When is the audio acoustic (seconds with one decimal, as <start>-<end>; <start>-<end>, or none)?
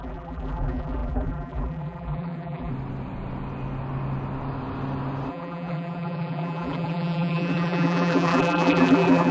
2.7-5.3